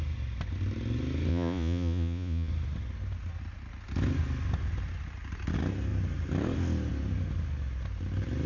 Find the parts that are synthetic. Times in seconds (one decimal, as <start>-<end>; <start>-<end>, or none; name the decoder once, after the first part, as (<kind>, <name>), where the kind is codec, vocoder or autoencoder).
1.3-2.5 (vocoder, Vocos)